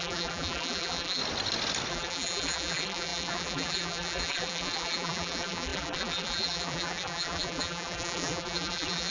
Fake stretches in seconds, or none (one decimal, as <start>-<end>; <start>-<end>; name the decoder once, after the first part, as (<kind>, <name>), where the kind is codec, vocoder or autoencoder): 0.0-1.2 (vocoder, BigVGAN v2); 1.9-9.1